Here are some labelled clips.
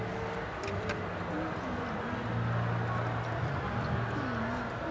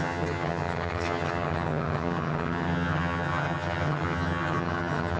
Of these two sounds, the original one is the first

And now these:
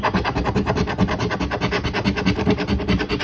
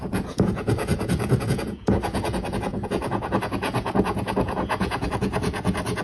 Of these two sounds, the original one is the first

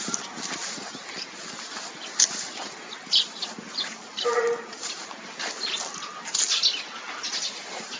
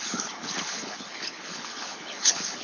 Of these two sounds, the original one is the first